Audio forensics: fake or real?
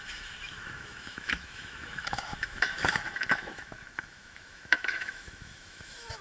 fake